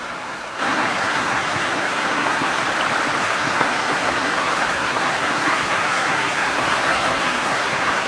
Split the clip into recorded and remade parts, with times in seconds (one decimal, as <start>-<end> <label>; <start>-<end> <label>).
0.0-2.6 remade; 2.6-3.2 recorded; 3.2-8.1 remade